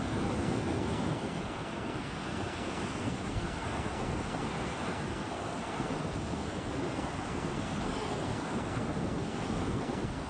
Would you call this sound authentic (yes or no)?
no